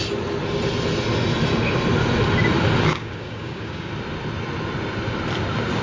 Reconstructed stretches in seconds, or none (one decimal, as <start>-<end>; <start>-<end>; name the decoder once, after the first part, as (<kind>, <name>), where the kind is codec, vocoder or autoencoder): 2.9-3.9 (codec, DAC)